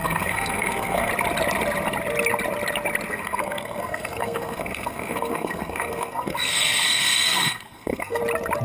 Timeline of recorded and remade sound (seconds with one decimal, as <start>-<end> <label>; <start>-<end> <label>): 0.0-1.1 remade; 1.1-3.1 recorded; 3.1-8.2 remade; 8.2-8.6 recorded